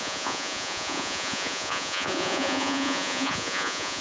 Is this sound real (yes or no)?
no